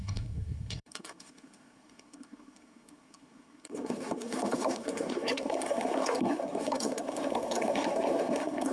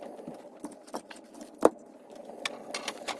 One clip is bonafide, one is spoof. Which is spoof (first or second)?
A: first